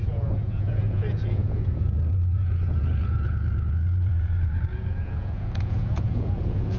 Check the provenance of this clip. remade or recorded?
remade